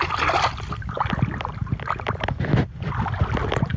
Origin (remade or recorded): recorded